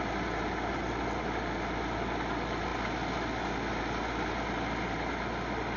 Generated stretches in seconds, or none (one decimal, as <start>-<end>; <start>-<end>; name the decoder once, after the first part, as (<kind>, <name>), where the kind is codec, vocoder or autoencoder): none